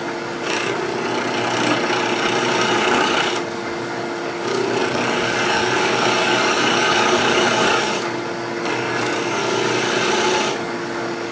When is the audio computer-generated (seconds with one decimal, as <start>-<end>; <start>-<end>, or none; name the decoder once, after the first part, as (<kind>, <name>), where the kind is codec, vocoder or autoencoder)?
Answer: 0.0-0.9 (codec, DAC); 2.8-9.4; 10.5-11.3